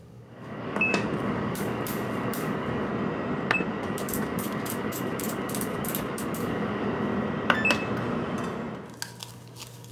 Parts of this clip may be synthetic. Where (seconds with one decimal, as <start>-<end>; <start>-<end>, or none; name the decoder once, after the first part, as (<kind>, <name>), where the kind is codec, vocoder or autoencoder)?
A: 0.0-2.9 (codec, DAC); 3.7-7.1; 9.3-9.9